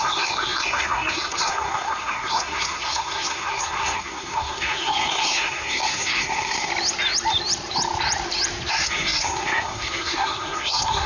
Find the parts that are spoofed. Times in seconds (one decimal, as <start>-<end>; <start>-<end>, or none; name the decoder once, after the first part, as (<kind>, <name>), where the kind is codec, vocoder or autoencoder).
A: 0.0-6.7 (codec, SNAC); 8.7-11.1